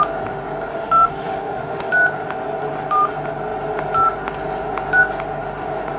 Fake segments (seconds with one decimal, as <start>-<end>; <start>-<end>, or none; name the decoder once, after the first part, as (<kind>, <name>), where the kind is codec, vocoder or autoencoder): 0.7-1.9 (autoencoder, DAC-VAE)